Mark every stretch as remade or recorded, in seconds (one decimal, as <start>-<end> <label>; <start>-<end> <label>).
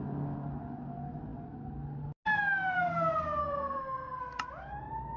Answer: 0.0-3.4 recorded; 3.4-4.2 remade; 4.2-5.2 recorded